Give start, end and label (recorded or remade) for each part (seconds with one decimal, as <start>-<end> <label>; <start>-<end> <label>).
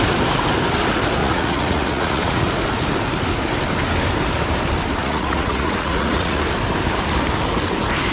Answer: 0.0-1.2 recorded; 1.2-2.5 remade; 2.5-5.0 recorded; 5.0-6.4 remade; 6.4-8.1 recorded